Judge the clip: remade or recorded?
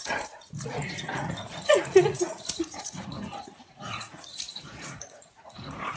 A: remade